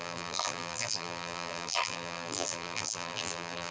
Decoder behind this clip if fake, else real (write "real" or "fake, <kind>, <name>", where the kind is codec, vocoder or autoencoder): fake, vocoder, BigVGAN v2